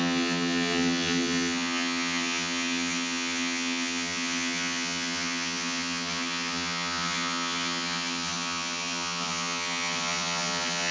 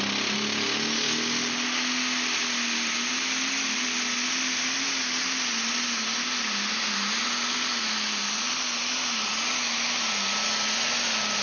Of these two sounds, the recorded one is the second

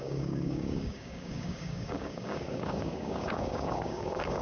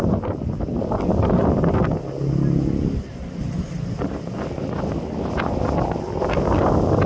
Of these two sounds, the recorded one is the second